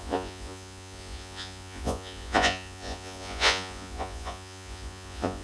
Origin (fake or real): fake